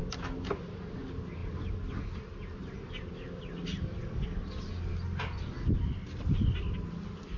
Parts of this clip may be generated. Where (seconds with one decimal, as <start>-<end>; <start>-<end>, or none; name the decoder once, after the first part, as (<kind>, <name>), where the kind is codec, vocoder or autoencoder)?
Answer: none